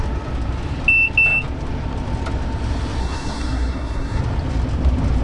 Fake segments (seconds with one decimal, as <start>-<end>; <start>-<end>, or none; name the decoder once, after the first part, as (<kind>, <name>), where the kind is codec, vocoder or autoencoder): 3.0-4.2 (codec, SNAC)